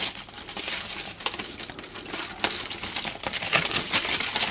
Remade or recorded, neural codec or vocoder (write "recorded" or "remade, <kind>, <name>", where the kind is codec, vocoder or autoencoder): recorded